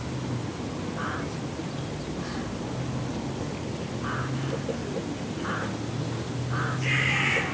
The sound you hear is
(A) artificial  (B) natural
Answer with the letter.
B